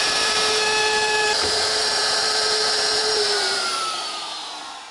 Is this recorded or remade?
remade